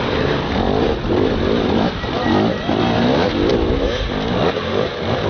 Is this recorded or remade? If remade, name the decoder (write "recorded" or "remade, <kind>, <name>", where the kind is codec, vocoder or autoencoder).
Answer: recorded